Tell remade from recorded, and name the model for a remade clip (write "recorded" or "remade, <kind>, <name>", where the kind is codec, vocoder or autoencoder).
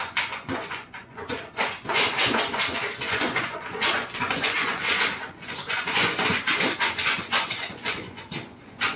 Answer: remade, vocoder, Vocos